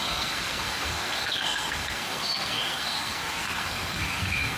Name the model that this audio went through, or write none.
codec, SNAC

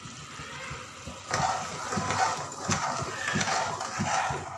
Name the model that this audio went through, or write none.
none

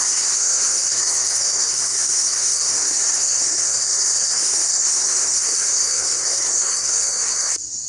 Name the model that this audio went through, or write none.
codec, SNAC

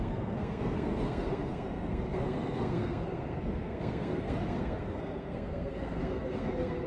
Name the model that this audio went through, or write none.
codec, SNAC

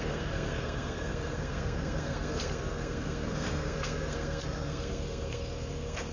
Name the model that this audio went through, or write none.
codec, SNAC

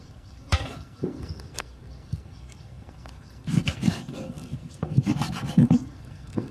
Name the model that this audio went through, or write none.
codec, SNAC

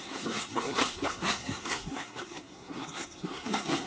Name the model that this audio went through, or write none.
codec, SNAC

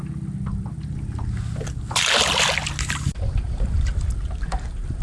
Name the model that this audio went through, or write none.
none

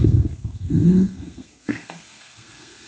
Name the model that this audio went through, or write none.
codec, SNAC